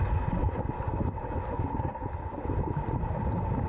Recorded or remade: recorded